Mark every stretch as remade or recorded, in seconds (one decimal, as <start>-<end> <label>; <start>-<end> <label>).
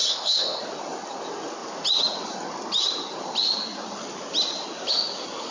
0.0-0.6 remade; 0.6-5.5 recorded